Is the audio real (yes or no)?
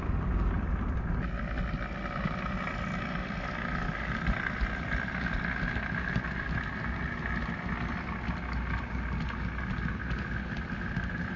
yes